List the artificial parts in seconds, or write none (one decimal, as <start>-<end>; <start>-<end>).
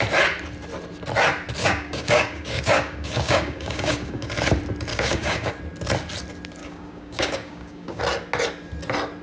1.6-4.3; 4.9-5.5; 6.6-8.0